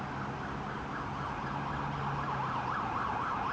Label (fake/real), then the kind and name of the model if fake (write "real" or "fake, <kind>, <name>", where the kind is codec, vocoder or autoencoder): real